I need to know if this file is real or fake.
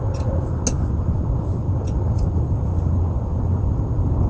real